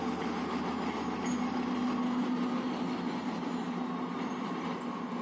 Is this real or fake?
real